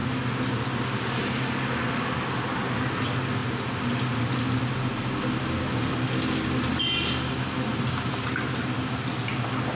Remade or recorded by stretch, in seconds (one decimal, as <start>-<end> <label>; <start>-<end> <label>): 0.0-9.7 recorded